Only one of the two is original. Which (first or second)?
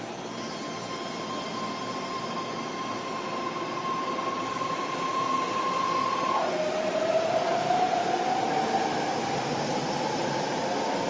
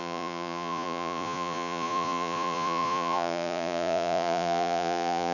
first